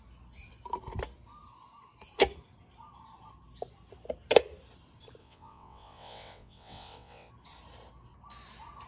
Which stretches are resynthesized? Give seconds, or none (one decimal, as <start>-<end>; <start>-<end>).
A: 5.2-7.3

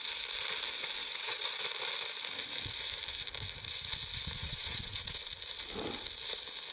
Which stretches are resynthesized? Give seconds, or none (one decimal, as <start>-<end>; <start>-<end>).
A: 1.0-1.6; 4.4-5.2

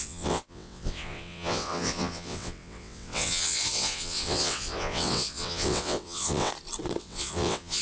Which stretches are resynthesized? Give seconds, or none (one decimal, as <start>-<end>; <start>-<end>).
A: 0.0-6.5; 7.0-7.8

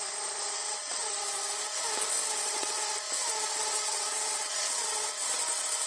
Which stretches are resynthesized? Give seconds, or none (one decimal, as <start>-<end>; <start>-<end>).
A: 0.6-1.1; 2.2-2.8; 3.9-5.4

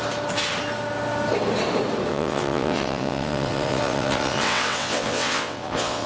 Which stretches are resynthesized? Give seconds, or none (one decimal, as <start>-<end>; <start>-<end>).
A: 2.1-6.1

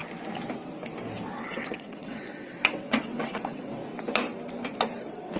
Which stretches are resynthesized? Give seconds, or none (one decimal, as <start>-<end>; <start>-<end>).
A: 1.4-3.8; 5.0-5.4

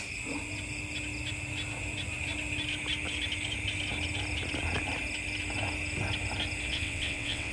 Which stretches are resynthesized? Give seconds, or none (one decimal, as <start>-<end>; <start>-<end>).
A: 6.7-7.5

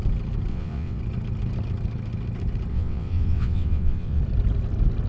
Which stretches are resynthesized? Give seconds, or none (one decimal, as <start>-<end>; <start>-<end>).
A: 0.5-1.0; 2.7-4.2